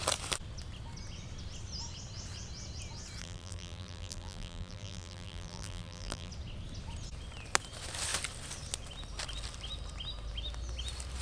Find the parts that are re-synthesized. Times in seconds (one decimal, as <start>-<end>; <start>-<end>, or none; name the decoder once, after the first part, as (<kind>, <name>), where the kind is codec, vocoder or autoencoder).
3.2-6.3 (vocoder, BigVGAN v2)